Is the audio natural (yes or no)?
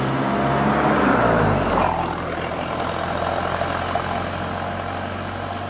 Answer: yes